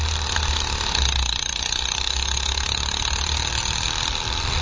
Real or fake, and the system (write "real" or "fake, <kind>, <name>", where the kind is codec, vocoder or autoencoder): real